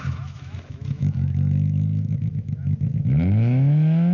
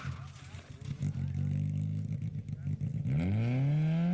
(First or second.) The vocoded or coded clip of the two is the first